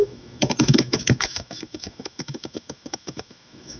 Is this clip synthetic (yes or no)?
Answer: yes